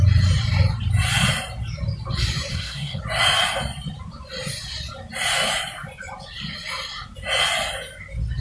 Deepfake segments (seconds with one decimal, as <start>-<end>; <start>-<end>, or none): 2.5-3.0